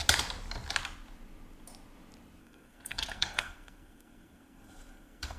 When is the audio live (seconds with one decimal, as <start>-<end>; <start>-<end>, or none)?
0.0-2.4